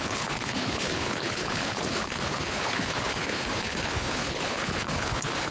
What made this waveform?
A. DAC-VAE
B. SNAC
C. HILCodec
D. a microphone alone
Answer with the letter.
C